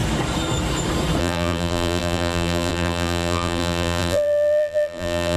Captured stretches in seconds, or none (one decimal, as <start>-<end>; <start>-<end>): 0.0-1.2